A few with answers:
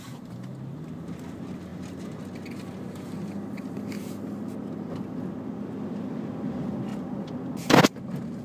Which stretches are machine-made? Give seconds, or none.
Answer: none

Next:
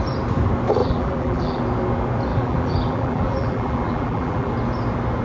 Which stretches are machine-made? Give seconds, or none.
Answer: 0.8-1.6 (vocoder, BigVGAN v2); 2.3-4.5

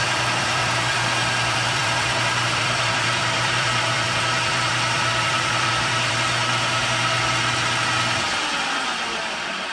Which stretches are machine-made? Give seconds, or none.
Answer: 0.0-6.4 (vocoder, BigVGAN v2); 8.5-9.7

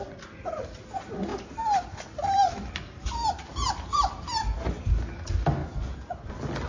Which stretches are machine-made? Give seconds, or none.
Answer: 5.6-6.3 (vocoder, BigVGAN v2)

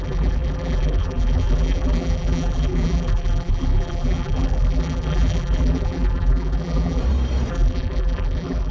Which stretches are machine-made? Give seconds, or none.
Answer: 0.0-7.0 (vocoder, BigVGAN v2); 7.5-8.7

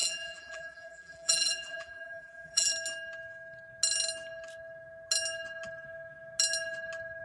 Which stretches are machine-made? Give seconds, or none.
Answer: 0.0-2.7 (vocoder, BigVGAN v2)

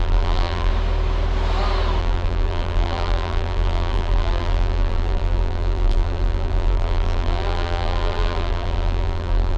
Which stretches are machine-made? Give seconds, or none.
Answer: 0.0-0.7 (vocoder, BigVGAN v2); 2.0-9.6